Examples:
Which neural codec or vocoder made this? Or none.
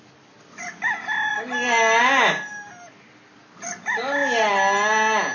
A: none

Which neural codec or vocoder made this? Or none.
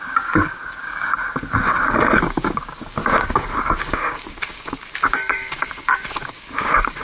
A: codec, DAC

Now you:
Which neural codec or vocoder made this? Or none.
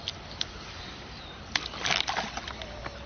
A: none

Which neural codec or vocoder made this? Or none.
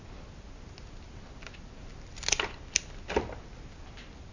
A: none